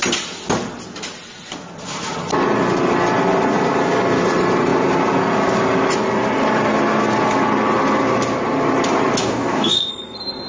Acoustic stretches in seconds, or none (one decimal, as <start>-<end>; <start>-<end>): 0.0-9.2; 9.9-10.5